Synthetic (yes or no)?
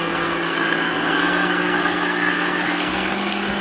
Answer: yes